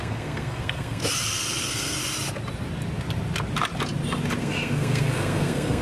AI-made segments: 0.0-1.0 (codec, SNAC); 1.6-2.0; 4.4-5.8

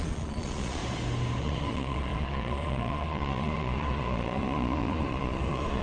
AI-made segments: 0.0-0.8 (vocoder, Vocos); 1.4-5.8

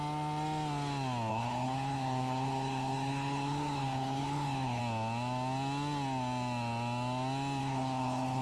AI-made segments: 1.3-4.8 (codec, HILCodec); 7.6-8.4

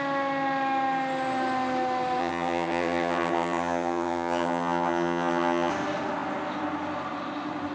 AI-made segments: 2.2-5.7 (vocoder, HiFi-GAN)

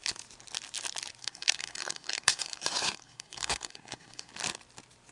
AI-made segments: 1.2-4.3 (codec, SNAC)

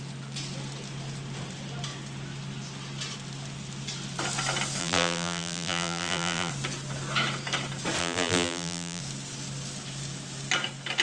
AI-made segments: 4.8-6.5 (vocoder, BigVGAN v2); 8.0-9.0

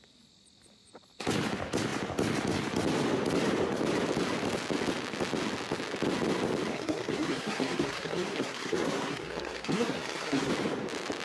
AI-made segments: 6.7-10.5 (codec, SNAC)